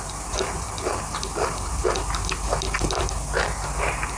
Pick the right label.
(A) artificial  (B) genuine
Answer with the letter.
B